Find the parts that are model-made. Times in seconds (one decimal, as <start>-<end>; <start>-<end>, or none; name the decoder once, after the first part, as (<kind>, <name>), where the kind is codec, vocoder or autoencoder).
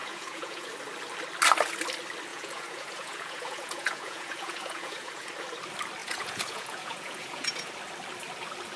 0.0-0.7 (vocoder, Vocos); 2.3-5.3; 6.0-7.7